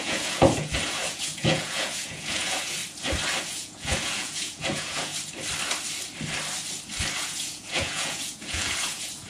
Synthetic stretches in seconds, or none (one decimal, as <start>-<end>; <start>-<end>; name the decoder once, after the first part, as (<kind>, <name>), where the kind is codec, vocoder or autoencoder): 0.0-2.8 (vocoder, Vocos); 3.4-5.1; 7.2-9.3